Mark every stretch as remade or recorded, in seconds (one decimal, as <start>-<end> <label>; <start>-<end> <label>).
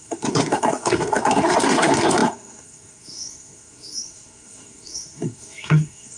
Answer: 0.0-6.2 remade